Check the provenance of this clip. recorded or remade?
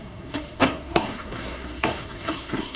remade